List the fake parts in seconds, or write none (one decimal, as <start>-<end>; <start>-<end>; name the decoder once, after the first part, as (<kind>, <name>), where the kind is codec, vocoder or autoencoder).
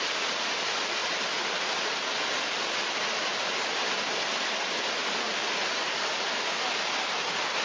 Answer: none